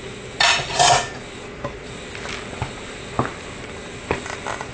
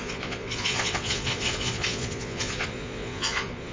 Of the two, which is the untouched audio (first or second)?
first